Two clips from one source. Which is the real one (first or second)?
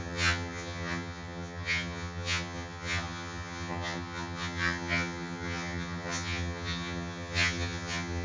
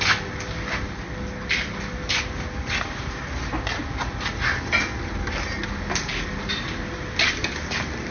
second